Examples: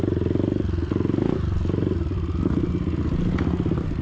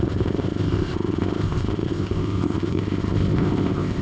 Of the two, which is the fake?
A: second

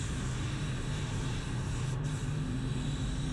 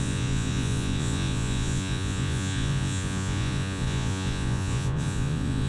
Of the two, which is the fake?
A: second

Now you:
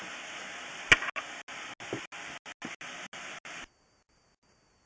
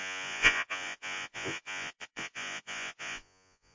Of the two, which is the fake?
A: second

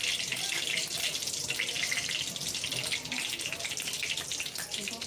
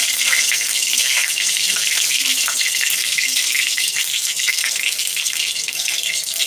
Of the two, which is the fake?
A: second